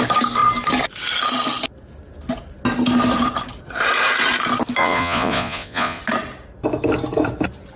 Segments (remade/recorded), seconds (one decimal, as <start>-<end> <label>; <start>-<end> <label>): 0.0-4.8 recorded; 4.8-6.0 remade; 6.0-7.8 recorded